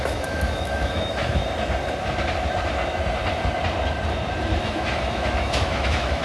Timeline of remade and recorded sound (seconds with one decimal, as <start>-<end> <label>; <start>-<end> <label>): 0.0-1.4 remade; 1.4-4.6 recorded; 4.6-6.2 remade